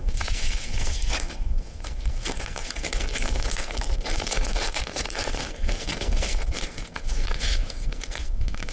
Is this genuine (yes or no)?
no